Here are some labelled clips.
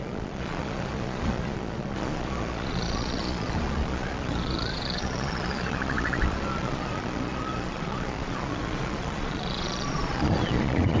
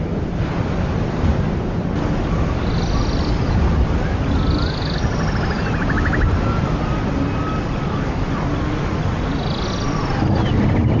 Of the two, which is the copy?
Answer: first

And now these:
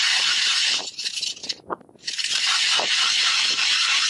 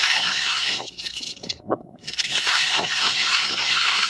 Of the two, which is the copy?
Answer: second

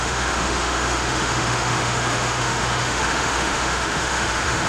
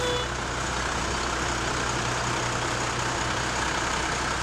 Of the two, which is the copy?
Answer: first